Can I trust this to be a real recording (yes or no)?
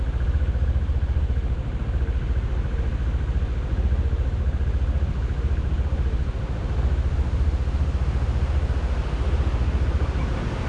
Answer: yes